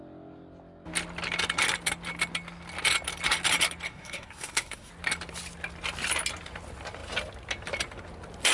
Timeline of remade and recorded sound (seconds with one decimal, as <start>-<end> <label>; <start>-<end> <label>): 0.0-3.9 recorded; 3.9-4.9 remade; 4.9-8.5 recorded